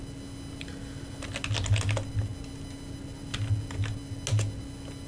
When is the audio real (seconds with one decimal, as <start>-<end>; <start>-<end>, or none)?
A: 0.0-5.1